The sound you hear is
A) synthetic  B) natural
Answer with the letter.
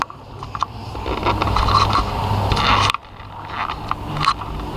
B